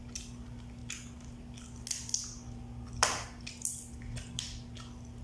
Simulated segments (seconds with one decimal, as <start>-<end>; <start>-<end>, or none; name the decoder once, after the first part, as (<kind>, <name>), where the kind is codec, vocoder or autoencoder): none